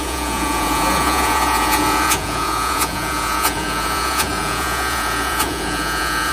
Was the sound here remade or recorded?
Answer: remade